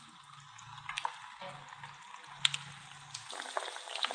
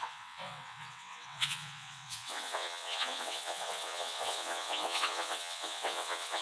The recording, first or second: first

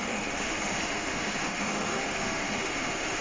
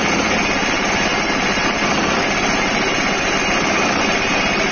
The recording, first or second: second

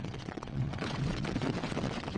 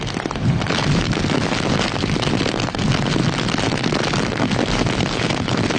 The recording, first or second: second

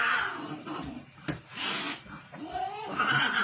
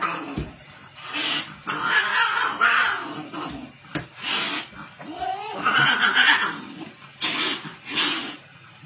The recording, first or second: second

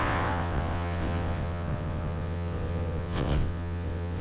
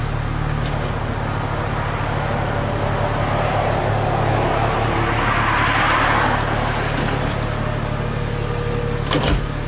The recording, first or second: second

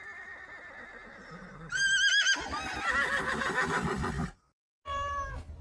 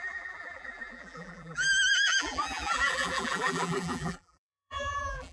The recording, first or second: first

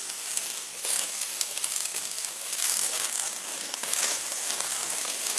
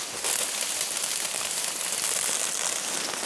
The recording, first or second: second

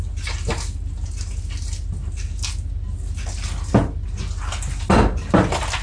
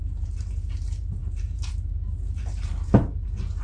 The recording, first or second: first